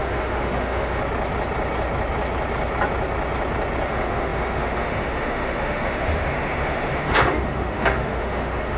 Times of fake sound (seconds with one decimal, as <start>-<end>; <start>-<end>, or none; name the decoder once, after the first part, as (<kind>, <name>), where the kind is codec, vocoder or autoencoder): 0.0-1.0 (autoencoder, DAC-VAE); 3.9-8.8